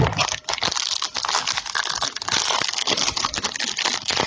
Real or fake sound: real